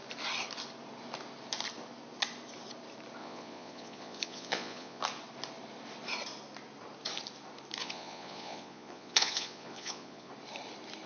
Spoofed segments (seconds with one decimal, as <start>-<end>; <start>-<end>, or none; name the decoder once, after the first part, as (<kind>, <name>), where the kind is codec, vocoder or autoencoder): 3.2-5.0 (vocoder, Vocos); 7.8-10.3